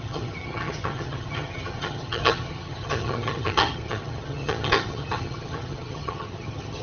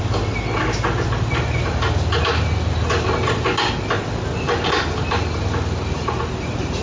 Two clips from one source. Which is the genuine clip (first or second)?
second